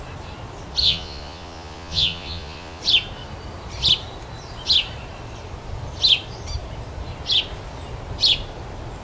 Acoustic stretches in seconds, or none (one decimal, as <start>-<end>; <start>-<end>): 0.0-0.8; 2.8-9.0